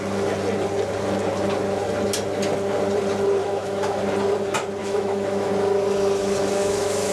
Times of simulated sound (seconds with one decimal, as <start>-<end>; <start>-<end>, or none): 3.4-4.0; 4.8-5.5; 6.6-7.1